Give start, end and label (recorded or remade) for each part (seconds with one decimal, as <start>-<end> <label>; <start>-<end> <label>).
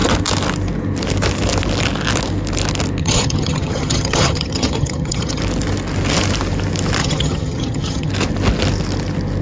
0.0-3.0 recorded; 3.0-5.4 remade; 5.4-7.0 recorded; 7.0-8.1 remade; 8.1-9.4 recorded